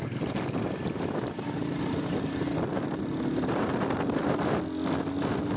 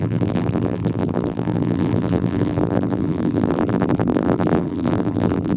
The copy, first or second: second